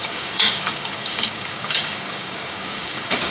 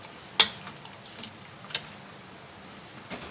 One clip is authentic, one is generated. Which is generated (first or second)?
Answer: first